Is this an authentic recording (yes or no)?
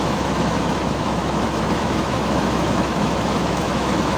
no